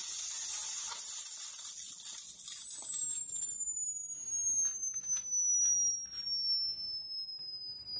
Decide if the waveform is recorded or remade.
recorded